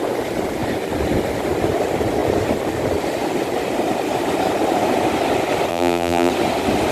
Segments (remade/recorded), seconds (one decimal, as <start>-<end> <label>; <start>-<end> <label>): 0.0-5.7 recorded; 5.7-6.3 remade; 6.3-6.9 recorded